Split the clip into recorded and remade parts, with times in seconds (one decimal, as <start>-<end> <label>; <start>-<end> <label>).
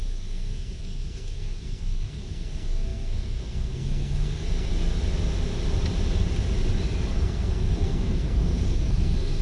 0.0-4.7 remade; 4.7-7.1 recorded; 7.1-9.4 remade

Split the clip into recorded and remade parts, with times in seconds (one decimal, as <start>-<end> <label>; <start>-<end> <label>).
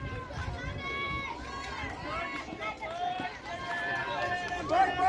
0.0-5.1 recorded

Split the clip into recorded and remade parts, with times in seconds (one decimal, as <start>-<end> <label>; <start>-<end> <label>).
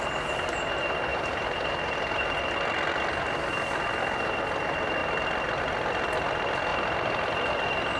0.0-1.1 recorded; 1.1-2.5 remade; 2.5-8.0 recorded